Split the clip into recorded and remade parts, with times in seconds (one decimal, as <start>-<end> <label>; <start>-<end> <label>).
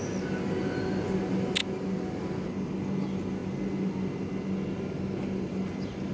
0.0-6.1 recorded